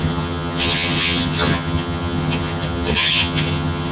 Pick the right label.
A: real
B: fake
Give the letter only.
B